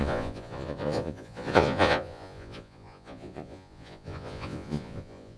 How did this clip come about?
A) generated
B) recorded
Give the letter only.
A